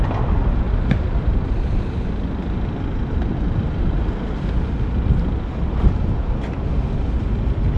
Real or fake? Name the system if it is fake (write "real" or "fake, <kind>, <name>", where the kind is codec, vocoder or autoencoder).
real